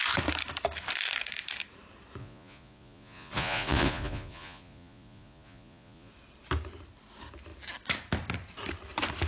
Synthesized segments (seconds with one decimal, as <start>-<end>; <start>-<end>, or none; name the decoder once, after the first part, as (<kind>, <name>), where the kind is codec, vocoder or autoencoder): 2.2-6.1 (vocoder, Vocos)